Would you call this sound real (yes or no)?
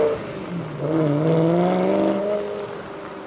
yes